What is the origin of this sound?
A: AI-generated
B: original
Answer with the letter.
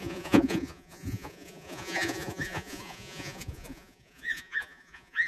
A